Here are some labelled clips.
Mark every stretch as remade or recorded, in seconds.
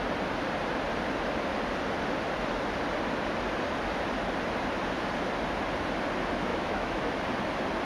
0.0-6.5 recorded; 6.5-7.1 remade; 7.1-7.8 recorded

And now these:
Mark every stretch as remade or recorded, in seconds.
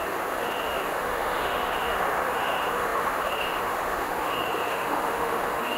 0.0-5.8 remade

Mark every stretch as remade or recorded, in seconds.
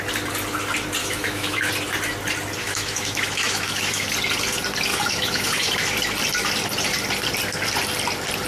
0.0-1.0 recorded; 1.0-1.7 remade; 1.7-2.6 recorded; 2.6-4.1 remade; 4.1-4.9 recorded; 4.9-5.7 remade; 5.7-8.5 recorded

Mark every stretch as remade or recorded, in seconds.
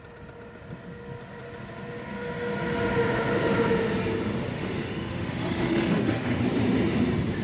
0.0-4.5 recorded; 4.5-6.4 remade; 6.4-7.4 recorded